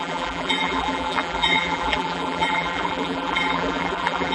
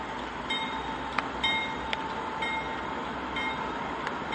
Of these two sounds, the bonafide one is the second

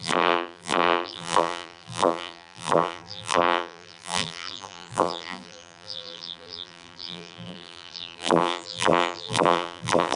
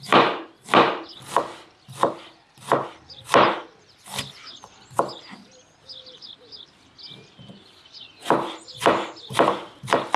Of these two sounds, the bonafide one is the second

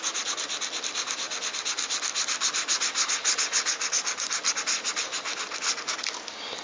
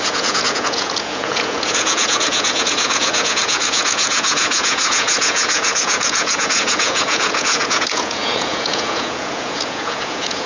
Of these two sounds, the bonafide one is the first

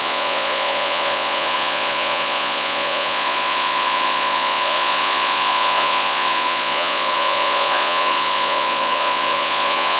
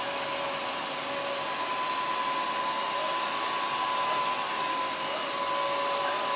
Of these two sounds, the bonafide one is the second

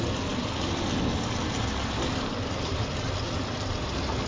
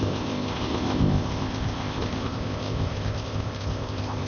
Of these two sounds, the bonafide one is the first